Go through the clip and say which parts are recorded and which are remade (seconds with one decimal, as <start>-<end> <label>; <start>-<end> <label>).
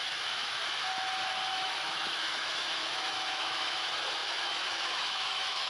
0.0-0.6 remade; 0.6-1.5 recorded; 1.5-5.7 remade